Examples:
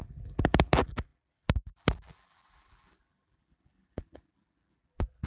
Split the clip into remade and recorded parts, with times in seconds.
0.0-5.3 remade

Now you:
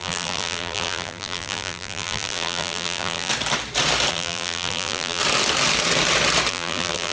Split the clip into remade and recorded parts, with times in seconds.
0.0-3.3 remade; 3.3-4.1 recorded; 4.1-5.2 remade; 5.2-6.5 recorded; 6.5-7.1 remade